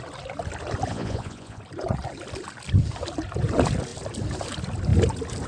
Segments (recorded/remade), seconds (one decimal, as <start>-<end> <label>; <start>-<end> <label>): 0.0-0.9 recorded; 0.9-1.6 remade; 1.6-5.5 recorded